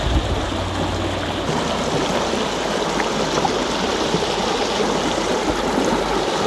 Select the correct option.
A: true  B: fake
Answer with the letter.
A